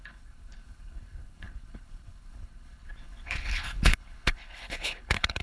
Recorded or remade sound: remade